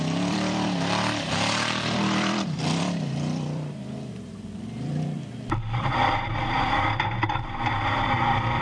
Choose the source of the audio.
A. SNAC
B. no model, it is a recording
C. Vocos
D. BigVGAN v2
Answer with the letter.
D